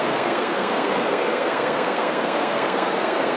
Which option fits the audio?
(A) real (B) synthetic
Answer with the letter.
B